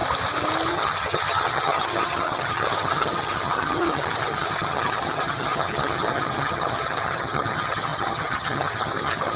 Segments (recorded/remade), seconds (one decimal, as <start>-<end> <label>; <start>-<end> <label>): 0.0-0.7 recorded; 0.7-9.4 remade